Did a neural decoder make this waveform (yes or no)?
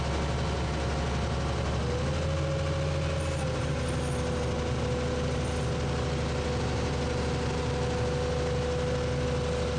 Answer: no